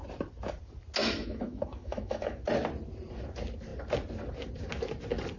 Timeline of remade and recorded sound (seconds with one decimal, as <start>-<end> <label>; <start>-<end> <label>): 0.0-1.0 recorded; 1.0-2.4 remade; 2.4-5.4 recorded